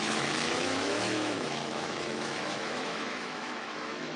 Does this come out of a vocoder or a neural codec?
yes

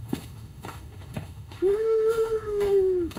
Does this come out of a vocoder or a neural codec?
yes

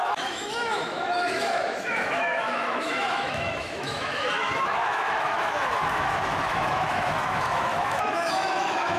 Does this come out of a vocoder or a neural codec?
yes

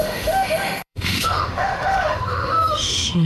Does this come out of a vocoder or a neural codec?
yes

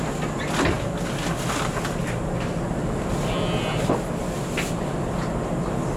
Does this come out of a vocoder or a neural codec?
no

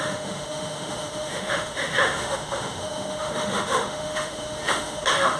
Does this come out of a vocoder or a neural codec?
yes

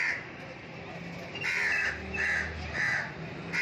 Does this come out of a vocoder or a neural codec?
no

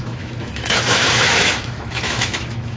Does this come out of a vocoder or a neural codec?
yes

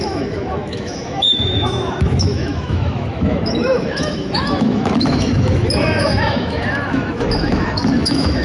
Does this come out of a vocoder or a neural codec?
yes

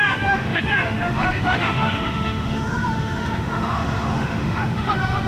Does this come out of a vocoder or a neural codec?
yes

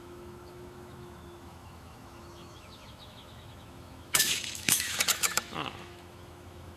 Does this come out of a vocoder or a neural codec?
yes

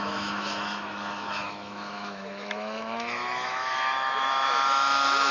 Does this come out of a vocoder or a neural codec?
yes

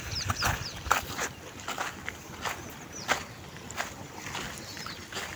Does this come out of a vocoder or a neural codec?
no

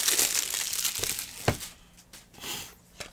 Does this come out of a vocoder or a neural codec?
no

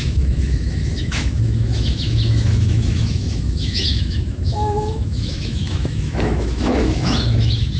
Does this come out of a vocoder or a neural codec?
yes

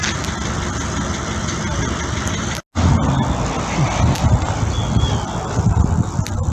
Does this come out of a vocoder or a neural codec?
no